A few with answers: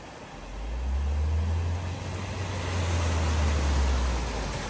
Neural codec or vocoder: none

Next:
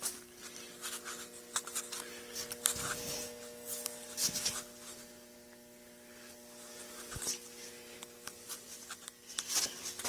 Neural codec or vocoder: none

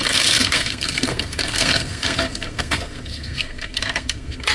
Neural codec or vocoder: codec, SNAC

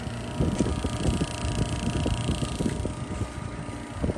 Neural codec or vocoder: none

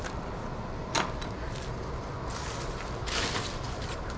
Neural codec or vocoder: none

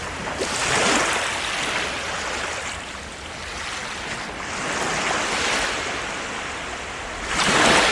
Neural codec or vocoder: none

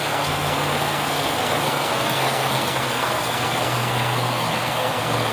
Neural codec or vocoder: codec, SNAC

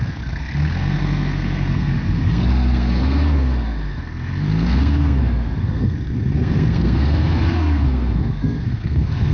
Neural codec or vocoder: codec, SNAC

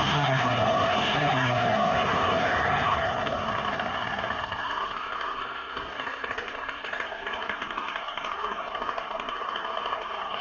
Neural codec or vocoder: codec, SNAC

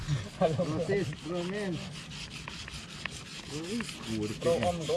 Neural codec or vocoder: none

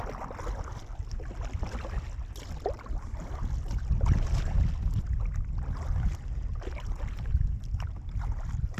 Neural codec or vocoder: none